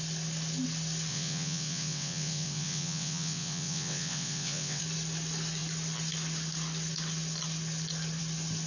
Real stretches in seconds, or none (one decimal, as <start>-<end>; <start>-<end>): 0.0-1.1; 4.8-8.7